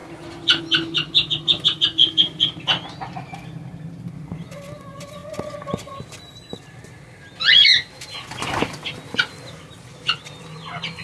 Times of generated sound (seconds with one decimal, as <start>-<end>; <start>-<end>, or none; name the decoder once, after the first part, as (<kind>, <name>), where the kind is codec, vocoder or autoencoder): 0.0-0.6 (vocoder, BigVGAN v2); 2.0-2.6